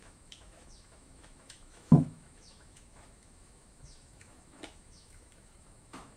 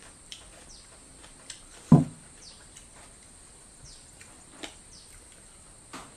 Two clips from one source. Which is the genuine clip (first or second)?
second